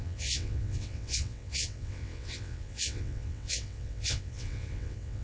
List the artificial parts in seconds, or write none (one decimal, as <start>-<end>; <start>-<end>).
0.0-5.2

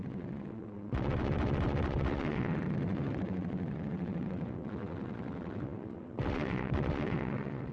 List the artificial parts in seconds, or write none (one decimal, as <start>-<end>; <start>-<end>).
0.0-7.7

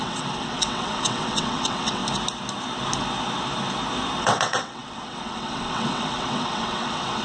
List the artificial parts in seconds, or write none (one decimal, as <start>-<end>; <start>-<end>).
0.0-2.0; 4.2-7.2

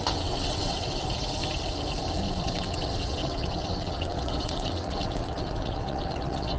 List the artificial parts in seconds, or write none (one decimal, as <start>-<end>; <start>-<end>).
0.0-1.0; 2.4-6.6

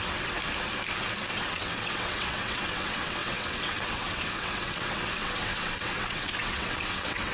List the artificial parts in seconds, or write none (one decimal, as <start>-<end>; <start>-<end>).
0.0-0.4; 1.2-7.3